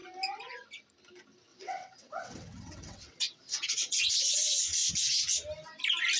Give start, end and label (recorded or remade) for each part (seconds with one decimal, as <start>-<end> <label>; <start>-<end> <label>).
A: 0.0-1.5 recorded; 1.5-4.9 remade; 4.9-6.2 recorded